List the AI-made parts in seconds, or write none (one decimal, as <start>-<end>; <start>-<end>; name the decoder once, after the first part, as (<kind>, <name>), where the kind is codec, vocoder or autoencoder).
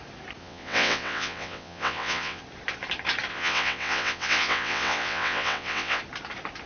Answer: 0.4-2.4 (vocoder, WaveNeXt); 3.3-6.0